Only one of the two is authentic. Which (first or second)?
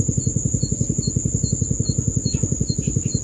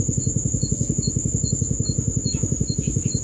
first